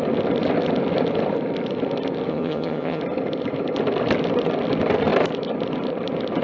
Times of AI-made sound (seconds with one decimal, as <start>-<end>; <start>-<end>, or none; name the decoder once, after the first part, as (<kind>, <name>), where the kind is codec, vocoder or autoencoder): 2.3-3.0 (vocoder, HiFi-GAN)